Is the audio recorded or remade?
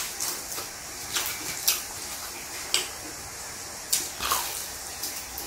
recorded